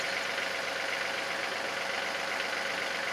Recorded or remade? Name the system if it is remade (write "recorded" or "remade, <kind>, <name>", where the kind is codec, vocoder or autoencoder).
recorded